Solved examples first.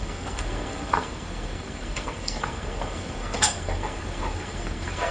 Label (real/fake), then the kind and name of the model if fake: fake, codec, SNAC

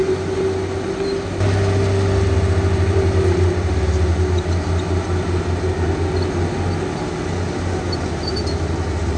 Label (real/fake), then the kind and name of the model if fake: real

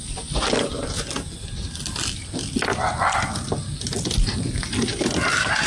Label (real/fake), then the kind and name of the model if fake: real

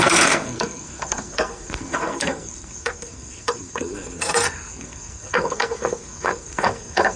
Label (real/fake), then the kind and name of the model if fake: fake, codec, SNAC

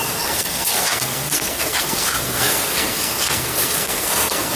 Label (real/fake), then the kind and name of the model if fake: fake, codec, SNAC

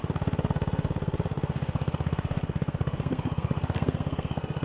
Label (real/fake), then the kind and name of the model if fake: fake, codec, SNAC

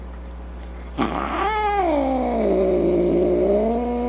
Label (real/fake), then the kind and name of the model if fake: real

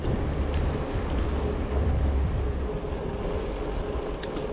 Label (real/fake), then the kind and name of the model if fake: real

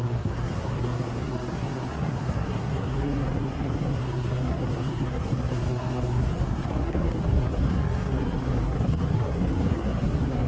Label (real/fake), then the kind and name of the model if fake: fake, codec, SNAC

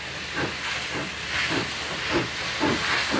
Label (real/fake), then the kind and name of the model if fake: real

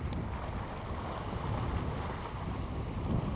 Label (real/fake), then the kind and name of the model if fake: real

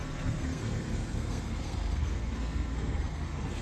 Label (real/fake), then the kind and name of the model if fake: fake, codec, SNAC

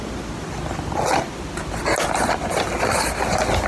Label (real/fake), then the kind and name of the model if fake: real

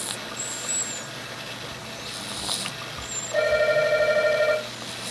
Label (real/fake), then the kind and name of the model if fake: real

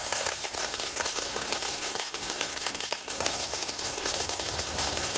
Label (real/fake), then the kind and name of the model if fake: fake, codec, SNAC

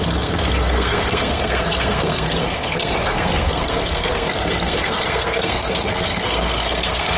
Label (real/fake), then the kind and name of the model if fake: fake, codec, SNAC